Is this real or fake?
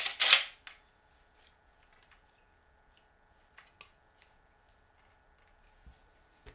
real